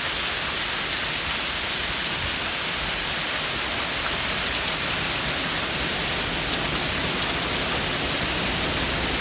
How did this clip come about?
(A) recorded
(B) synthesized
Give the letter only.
A